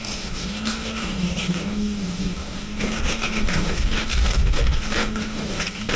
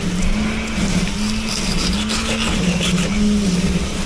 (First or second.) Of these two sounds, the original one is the second